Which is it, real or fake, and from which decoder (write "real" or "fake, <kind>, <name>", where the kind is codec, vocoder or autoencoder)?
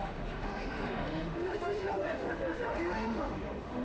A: fake, autoencoder, DAC-VAE